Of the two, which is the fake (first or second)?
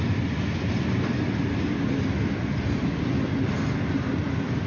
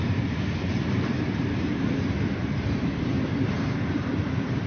second